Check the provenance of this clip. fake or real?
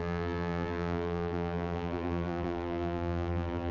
fake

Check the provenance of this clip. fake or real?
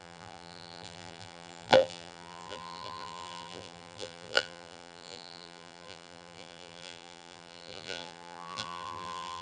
fake